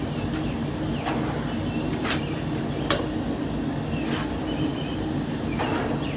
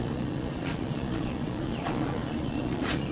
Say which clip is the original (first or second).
first